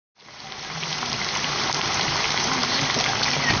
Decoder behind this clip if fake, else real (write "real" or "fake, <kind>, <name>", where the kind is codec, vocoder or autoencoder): real